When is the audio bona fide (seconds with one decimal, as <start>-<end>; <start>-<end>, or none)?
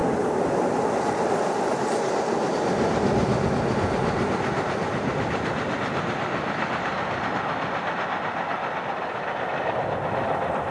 0.0-10.7